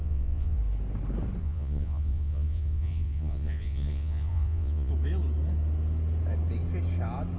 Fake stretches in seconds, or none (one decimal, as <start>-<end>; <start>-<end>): 0.0-0.6; 1.4-4.9